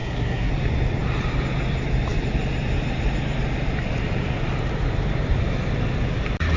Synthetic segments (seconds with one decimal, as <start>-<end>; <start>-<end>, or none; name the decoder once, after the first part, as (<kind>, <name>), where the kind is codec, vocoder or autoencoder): 0.0-0.5 (codec, SNAC)